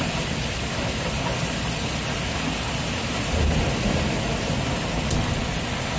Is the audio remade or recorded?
recorded